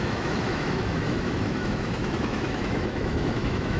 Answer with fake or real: fake